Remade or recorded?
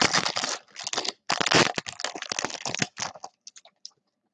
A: recorded